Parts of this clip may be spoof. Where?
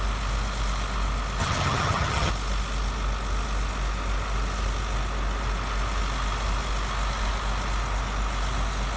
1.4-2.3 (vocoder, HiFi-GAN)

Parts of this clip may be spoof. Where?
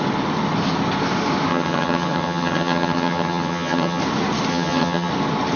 1.5-4.0 (vocoder, HiFi-GAN); 4.5-5.1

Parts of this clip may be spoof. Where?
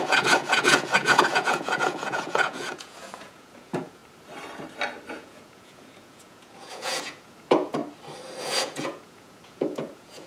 0.0-4.0 (vocoder, Vocos); 5.1-7.8; 8.4-10.3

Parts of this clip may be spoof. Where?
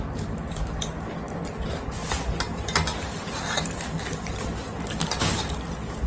none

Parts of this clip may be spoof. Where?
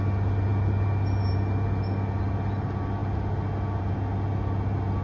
none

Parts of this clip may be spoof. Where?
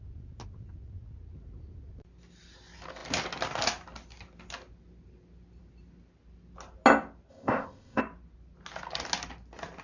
7.3-8.0 (codec, ZipCodec)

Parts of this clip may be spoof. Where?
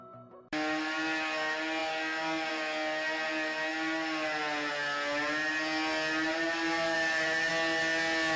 6.3-7.5 (vocoder, BigVGAN v2)